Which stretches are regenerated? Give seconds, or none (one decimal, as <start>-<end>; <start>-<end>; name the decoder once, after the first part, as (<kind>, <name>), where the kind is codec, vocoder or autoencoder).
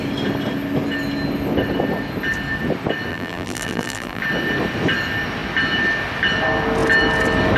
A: 3.1-4.2 (vocoder, BigVGAN v2)